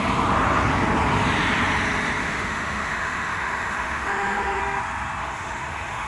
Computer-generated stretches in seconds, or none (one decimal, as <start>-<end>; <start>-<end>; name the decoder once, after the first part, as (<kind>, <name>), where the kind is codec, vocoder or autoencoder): 2.2-4.6 (autoencoder, DAC-VAE); 5.2-6.1